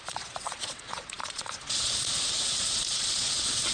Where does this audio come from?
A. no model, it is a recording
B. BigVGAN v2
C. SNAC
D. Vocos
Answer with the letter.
D